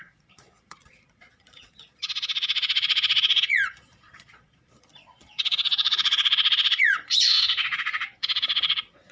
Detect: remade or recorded remade